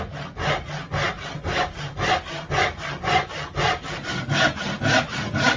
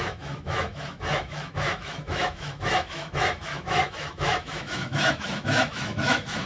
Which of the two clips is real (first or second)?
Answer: first